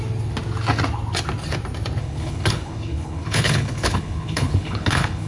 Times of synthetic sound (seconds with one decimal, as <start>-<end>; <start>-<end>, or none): 2.0-5.3